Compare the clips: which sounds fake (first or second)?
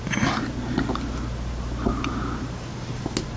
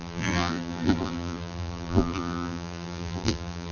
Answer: second